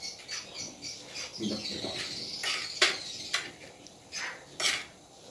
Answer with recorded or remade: recorded